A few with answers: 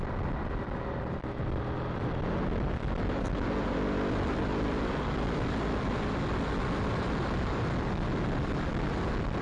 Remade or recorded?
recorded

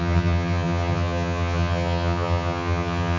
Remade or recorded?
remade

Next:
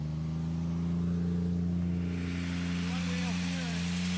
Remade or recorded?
recorded